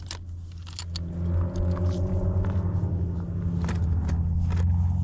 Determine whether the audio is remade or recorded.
recorded